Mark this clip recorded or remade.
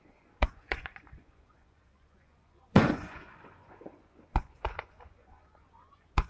remade